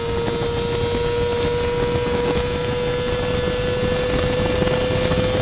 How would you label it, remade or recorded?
recorded